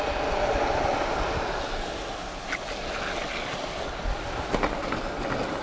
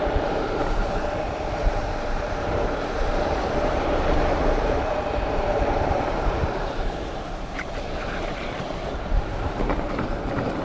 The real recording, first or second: first